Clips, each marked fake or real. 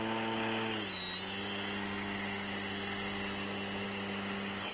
real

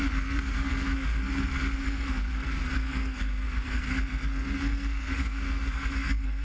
fake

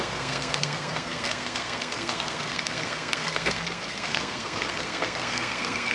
fake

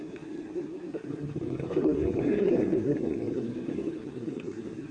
fake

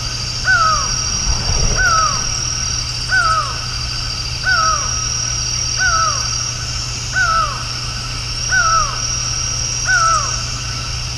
real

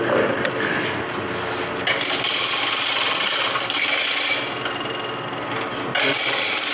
real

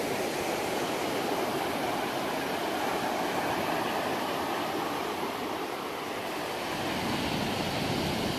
real